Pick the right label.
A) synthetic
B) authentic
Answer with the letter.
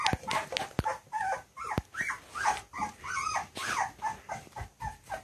B